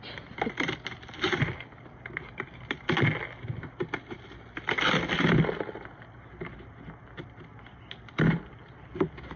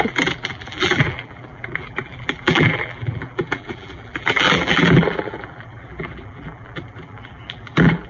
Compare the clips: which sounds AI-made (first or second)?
second